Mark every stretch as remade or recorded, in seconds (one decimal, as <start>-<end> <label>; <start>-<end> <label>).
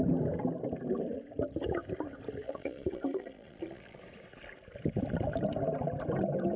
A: 0.0-2.4 recorded; 2.4-4.0 remade; 4.0-6.6 recorded